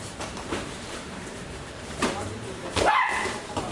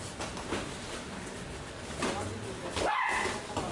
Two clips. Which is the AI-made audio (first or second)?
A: first